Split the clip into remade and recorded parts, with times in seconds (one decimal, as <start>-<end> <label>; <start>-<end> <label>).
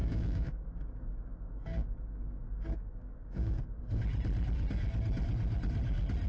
0.0-3.8 remade; 3.8-6.3 recorded